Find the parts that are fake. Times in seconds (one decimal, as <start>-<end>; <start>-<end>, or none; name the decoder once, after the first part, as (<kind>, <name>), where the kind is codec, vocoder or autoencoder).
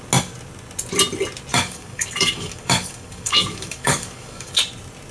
1.5-4.6 (codec, DAC)